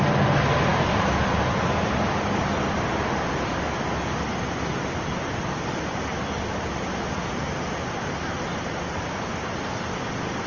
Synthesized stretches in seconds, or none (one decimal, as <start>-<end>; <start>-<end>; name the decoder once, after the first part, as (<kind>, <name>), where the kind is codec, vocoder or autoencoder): none